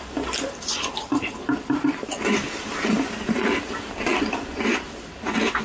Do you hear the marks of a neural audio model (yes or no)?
no